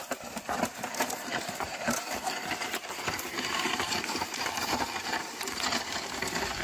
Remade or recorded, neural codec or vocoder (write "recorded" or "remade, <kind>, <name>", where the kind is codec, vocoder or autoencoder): remade, vocoder, BigVGAN v2